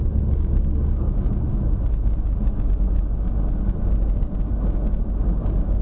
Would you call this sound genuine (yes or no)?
yes